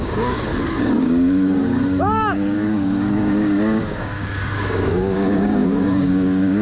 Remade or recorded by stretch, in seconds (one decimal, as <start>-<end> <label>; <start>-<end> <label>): 0.0-0.5 remade; 0.5-1.0 recorded; 1.0-6.6 remade